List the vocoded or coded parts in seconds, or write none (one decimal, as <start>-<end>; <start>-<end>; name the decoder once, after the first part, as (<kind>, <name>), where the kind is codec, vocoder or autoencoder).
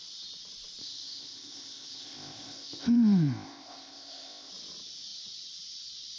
0.8-4.5 (codec, ZipCodec)